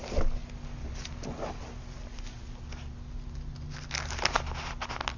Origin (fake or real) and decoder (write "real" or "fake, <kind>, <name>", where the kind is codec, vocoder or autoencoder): real